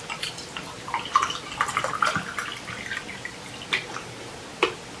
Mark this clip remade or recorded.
recorded